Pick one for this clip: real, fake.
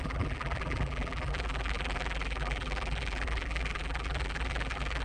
fake